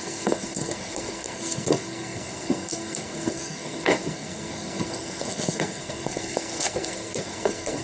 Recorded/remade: remade